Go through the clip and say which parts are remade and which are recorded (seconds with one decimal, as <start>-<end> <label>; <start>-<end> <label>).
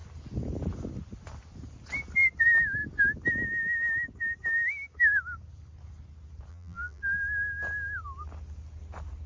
0.0-6.5 recorded; 6.5-7.0 remade; 7.0-9.3 recorded